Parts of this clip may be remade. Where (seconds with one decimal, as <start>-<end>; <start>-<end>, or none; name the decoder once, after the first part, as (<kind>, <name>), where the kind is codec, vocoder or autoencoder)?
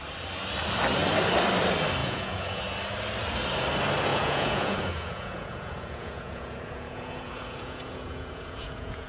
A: 2.0-2.6 (vocoder, Vocos); 4.1-9.1